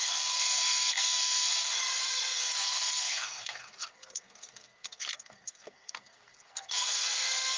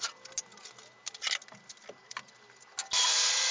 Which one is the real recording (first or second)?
second